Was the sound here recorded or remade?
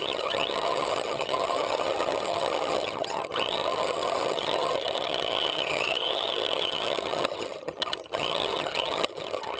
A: remade